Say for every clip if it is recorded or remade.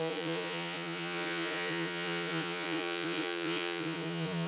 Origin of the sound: remade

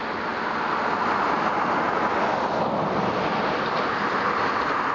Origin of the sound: recorded